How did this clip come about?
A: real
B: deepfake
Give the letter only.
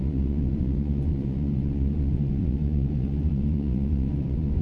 B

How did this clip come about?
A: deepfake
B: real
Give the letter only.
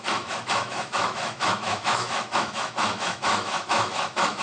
A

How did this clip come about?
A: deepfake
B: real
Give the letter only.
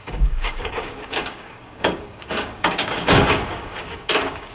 A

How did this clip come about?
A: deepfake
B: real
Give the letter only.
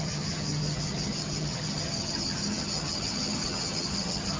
A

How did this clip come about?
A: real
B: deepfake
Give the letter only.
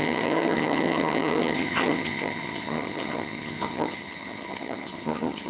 B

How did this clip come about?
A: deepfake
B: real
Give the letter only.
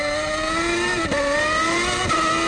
B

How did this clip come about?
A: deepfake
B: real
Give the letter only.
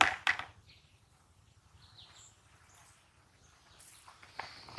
B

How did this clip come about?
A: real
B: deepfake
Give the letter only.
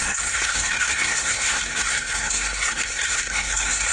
B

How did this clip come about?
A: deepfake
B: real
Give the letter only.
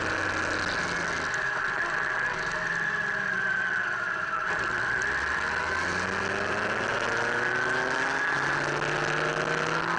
B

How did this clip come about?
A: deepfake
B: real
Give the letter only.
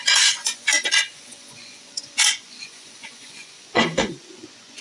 A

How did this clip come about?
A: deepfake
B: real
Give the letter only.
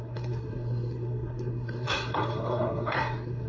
A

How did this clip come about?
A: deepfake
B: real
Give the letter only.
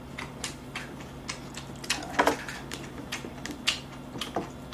B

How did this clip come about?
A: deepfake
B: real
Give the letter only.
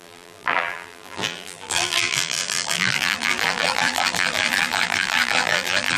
A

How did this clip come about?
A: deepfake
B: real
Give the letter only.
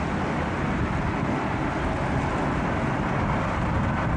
B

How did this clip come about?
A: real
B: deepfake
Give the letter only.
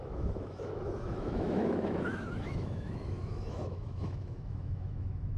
B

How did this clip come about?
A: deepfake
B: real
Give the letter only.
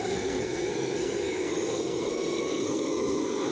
A